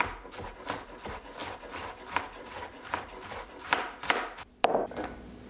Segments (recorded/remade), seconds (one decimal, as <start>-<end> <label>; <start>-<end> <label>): 0.0-1.4 recorded; 1.4-4.7 remade; 4.7-5.5 recorded